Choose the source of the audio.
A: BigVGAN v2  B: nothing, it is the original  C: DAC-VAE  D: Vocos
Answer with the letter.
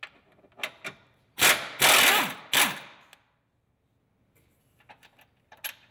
B